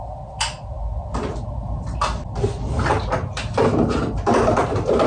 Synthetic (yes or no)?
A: no